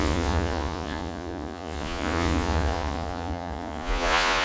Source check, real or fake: fake